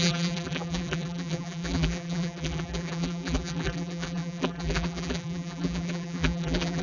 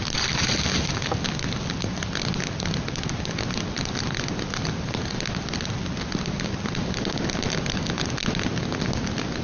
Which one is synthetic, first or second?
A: first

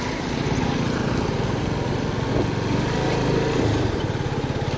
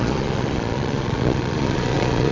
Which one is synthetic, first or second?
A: second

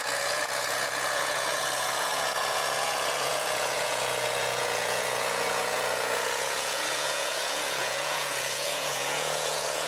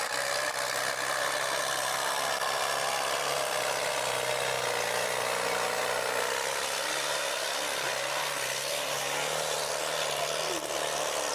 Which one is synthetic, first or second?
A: first